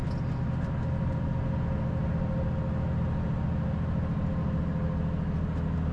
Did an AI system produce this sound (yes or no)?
no